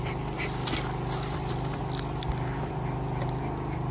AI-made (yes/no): no